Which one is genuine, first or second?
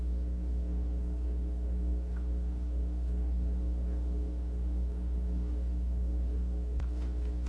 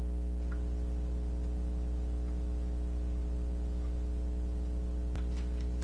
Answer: second